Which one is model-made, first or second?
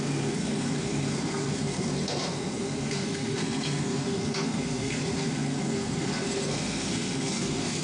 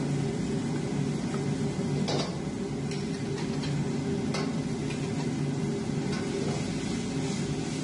first